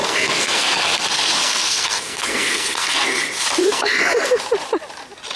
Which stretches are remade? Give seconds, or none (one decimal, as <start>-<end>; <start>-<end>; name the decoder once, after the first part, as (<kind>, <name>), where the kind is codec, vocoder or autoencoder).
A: 0.0-3.2 (codec, SNAC); 3.6-4.4